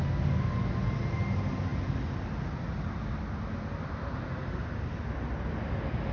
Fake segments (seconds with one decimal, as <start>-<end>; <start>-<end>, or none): none